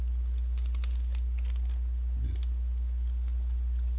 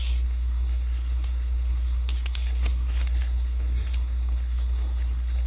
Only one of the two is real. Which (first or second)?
first